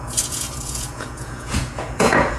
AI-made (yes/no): yes